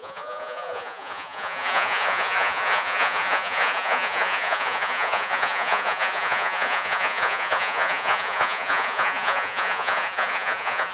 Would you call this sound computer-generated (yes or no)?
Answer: yes